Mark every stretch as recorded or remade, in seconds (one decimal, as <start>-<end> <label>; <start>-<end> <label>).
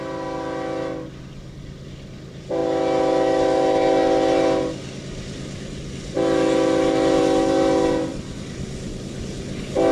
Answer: 0.0-9.9 recorded